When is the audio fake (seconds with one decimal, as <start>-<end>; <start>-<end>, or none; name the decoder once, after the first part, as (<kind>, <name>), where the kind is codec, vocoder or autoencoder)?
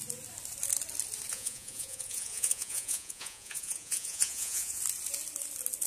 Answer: 1.3-4.8 (vocoder, Vocos)